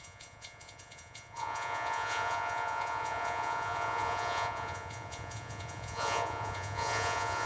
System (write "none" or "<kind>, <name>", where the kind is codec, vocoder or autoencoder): vocoder, Vocos